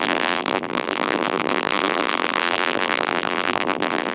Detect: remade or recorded remade